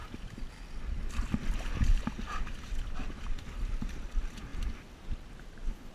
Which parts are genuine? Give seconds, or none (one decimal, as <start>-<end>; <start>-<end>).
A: 0.0-5.9